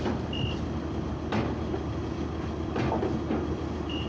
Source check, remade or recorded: recorded